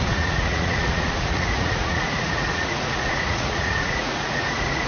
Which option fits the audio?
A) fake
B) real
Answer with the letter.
A